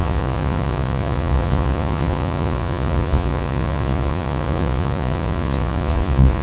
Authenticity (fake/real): fake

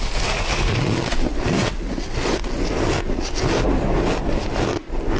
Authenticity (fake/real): real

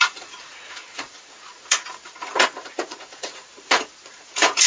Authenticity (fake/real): fake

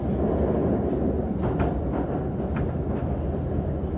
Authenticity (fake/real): real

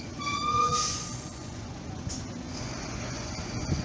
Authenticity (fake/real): fake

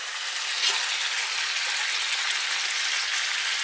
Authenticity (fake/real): real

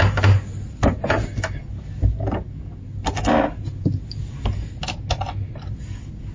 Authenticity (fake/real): real